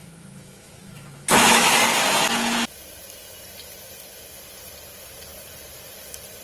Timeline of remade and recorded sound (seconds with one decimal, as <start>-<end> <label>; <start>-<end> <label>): 0.0-1.7 remade; 1.7-6.4 recorded